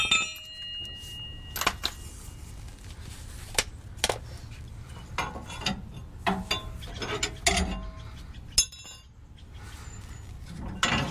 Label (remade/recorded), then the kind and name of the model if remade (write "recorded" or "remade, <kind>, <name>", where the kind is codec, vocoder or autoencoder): recorded